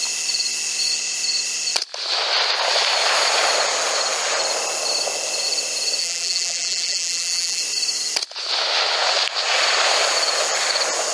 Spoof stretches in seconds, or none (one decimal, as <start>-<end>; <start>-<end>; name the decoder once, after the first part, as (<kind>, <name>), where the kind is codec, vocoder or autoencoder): 6.0-7.6 (vocoder, BigVGAN v2)